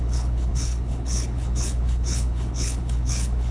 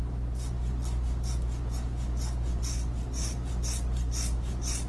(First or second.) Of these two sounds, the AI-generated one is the first